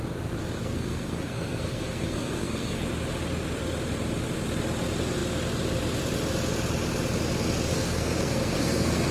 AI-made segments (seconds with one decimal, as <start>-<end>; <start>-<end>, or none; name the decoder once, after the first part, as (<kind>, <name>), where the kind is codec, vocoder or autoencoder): 0.6-2.9 (codec, SNAC); 7.7-9.1